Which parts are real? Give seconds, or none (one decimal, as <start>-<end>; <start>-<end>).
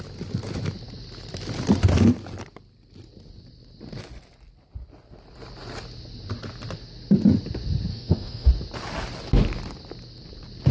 0.0-7.9; 8.5-10.7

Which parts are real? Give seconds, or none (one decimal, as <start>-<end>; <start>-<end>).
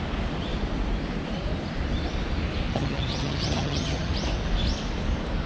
0.0-2.7; 4.1-5.5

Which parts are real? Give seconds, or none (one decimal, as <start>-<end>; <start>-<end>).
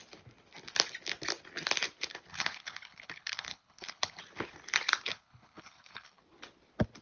0.0-2.3; 4.2-5.1; 6.2-7.0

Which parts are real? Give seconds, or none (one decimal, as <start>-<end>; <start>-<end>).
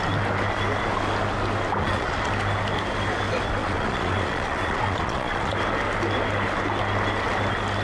0.0-1.8; 2.3-3.6; 5.5-7.8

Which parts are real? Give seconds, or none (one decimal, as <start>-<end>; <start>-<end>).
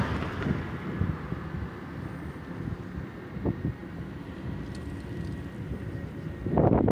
0.0-3.8